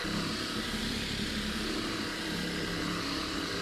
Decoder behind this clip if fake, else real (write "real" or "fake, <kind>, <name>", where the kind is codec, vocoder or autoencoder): fake, vocoder, BigVGAN v2